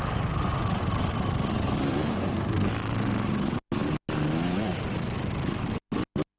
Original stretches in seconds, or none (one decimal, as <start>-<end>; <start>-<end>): 0.0-2.1; 2.7-6.4

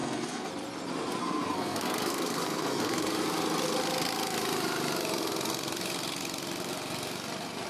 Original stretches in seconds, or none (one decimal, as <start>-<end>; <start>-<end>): 0.5-1.2; 3.1-7.7

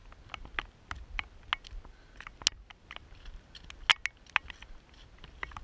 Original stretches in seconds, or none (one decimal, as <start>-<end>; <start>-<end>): 0.0-5.6

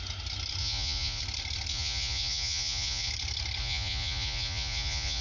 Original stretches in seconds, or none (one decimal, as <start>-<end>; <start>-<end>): 0.0-0.6; 1.2-1.7; 3.1-3.6

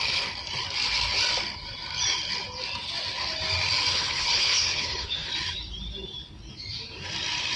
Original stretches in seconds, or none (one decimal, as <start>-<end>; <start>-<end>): 0.0-3.9; 5.3-7.6

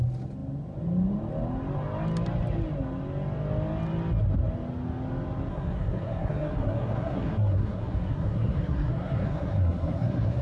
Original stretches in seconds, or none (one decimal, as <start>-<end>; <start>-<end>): 0.0-5.5

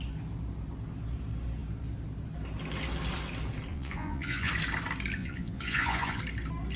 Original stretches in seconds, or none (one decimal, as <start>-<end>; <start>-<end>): 0.0-3.7; 4.5-5.2; 6.2-6.8

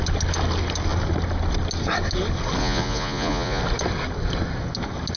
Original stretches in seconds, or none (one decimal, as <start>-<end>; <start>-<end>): 0.0-2.6; 3.6-5.2